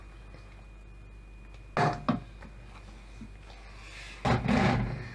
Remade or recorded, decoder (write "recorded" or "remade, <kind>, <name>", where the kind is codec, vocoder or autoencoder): recorded